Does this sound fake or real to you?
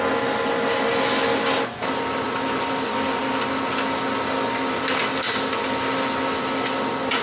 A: real